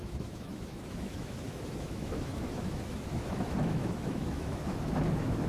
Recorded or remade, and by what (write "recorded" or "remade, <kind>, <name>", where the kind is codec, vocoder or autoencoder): remade, autoencoder, DAC-VAE